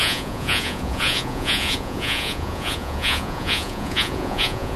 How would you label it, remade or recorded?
remade